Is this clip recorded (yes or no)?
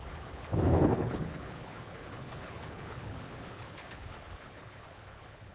no